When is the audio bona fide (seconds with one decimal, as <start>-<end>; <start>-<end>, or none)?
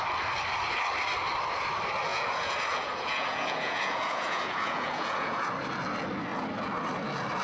0.0-2.1; 5.5-7.4